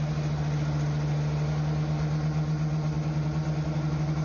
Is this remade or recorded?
recorded